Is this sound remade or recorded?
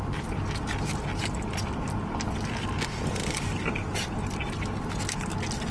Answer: recorded